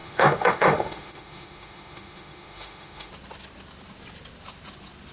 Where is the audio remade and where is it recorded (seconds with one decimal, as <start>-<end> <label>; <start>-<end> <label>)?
0.0-3.1 remade; 3.1-5.1 recorded